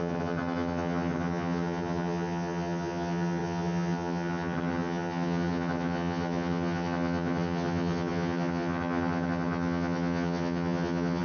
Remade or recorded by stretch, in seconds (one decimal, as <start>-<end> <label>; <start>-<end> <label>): 0.0-11.2 remade